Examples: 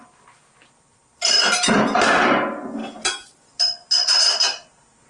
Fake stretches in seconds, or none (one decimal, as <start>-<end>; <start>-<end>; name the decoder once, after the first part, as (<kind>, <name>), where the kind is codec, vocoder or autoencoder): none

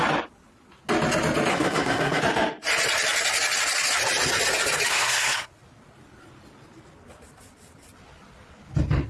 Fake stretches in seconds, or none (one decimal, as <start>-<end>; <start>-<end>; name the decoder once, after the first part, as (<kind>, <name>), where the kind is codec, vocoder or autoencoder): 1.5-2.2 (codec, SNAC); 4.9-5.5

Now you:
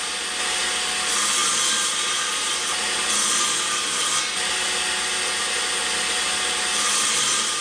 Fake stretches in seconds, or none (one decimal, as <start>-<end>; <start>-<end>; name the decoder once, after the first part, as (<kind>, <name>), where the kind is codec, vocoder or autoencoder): none

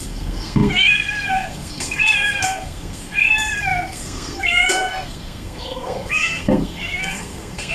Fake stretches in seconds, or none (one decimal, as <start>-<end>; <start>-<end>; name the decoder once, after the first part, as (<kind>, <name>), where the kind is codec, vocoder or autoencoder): 0.0-7.7 (codec, SNAC)

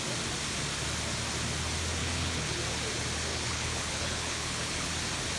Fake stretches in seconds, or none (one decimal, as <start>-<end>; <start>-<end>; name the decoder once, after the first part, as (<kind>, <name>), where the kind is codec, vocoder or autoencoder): 2.0-2.6 (codec, HILCodec); 3.3-4.9

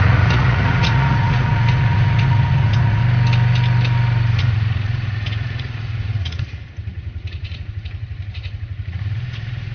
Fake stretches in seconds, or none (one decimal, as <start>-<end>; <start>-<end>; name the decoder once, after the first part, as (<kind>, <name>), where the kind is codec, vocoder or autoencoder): 0.0-3.0 (vocoder, Vocos); 4.4-9.7